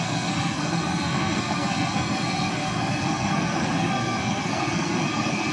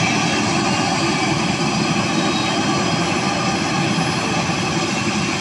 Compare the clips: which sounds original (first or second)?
second